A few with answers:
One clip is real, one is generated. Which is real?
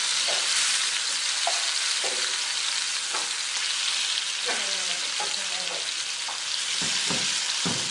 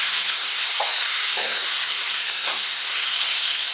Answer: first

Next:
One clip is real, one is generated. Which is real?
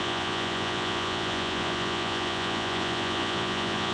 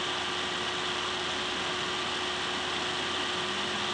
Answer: second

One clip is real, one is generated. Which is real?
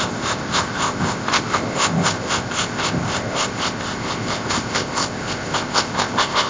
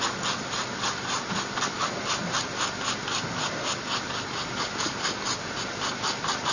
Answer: second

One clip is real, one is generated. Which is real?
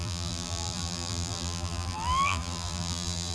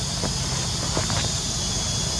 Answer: second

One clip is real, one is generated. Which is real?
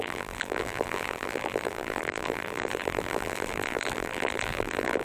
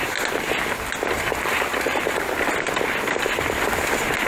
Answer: second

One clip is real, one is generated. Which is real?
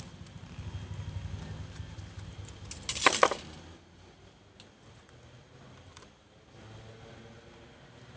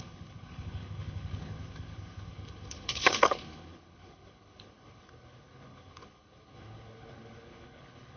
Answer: first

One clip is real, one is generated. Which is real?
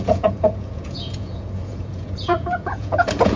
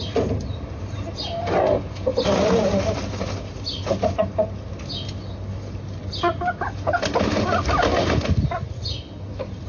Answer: second